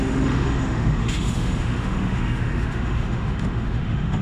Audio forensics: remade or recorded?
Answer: remade